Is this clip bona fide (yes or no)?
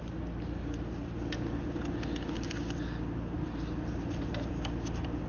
yes